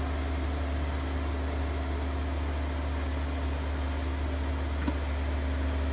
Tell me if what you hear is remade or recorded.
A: recorded